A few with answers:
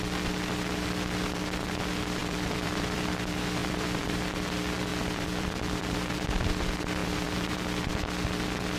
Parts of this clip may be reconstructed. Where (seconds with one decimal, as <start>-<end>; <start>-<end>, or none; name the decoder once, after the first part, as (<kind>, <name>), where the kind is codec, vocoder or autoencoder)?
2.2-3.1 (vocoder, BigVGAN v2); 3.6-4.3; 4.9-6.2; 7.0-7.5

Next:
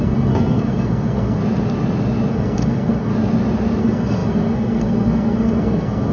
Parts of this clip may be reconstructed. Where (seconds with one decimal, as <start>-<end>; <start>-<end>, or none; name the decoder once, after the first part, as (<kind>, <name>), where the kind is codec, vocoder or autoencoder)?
0.0-1.4 (codec, SNAC); 2.3-3.1; 3.8-6.1

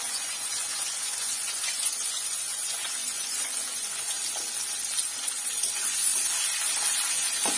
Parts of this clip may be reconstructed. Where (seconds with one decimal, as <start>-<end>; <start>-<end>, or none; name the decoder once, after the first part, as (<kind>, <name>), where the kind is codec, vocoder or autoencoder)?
0.0-4.2 (vocoder, Vocos); 5.2-6.1; 7.1-7.6

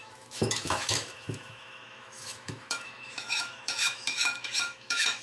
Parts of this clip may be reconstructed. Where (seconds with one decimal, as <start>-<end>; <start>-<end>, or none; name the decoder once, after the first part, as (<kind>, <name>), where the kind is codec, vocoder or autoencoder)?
0.0-5.2 (autoencoder, DAC-VAE)

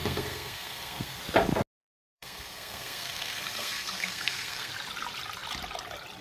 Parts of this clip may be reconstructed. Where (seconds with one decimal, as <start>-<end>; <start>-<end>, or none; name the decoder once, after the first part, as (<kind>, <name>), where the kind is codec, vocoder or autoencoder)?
0.0-1.2 (codec, SNAC); 1.8-4.7